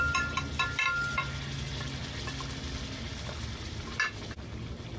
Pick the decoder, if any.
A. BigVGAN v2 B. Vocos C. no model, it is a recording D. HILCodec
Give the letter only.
C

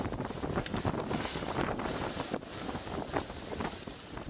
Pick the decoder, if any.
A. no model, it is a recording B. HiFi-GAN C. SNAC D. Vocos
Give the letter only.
A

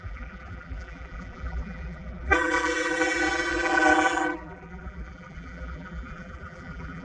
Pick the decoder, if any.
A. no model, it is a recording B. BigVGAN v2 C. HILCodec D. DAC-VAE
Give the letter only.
B